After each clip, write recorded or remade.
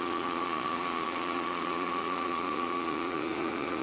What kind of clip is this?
remade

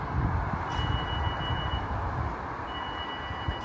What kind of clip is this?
recorded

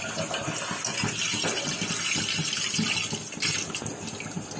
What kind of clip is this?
recorded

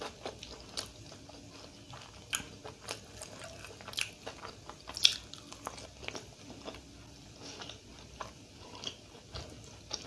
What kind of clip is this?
recorded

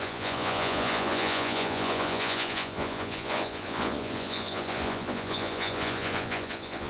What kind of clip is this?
remade